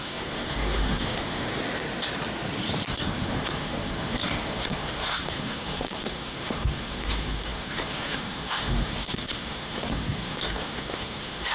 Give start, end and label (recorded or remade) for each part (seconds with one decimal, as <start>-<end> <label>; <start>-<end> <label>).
0.0-1.5 remade; 1.5-2.9 recorded; 2.9-11.5 remade